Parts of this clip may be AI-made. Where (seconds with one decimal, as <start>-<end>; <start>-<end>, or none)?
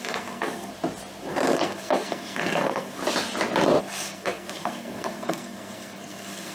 0.0-0.7; 1.3-3.0; 3.8-6.5